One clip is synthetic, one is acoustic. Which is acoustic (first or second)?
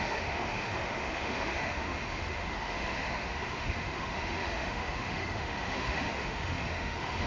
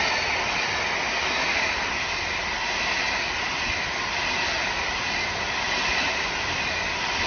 second